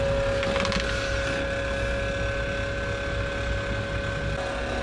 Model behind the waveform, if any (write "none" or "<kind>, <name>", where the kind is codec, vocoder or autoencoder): none